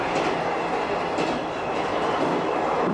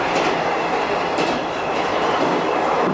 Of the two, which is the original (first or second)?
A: first